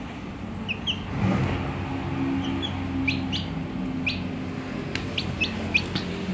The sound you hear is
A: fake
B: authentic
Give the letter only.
B